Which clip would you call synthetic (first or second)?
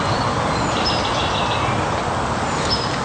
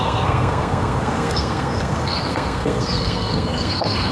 second